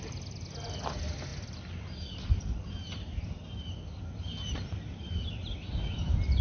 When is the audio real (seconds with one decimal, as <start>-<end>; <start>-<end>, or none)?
0.0-6.4